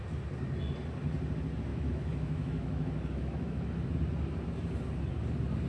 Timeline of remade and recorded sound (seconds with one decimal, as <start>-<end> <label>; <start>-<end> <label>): 0.0-1.7 recorded; 1.7-3.9 remade; 3.9-5.7 recorded